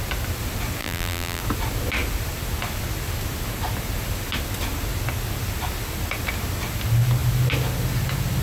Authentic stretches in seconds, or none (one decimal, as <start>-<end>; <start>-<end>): 0.0-0.8; 1.4-8.4